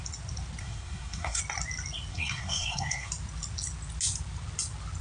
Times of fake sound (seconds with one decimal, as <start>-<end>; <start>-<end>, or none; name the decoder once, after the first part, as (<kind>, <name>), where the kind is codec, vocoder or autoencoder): 0.6-1.4 (codec, SNAC); 2.1-3.1